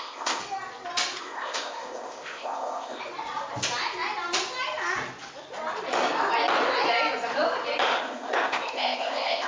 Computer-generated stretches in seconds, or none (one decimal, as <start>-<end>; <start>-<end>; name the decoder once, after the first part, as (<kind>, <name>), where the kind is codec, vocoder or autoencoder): 0.0-0.4 (codec, ZipCodec); 1.2-3.0; 8.0-9.5